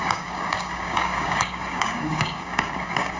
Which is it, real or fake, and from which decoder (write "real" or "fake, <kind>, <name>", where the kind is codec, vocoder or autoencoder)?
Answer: fake, codec, DAC